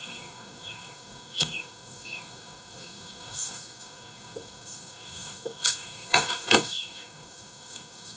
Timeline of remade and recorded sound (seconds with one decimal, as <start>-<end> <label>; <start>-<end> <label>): 0.0-8.2 remade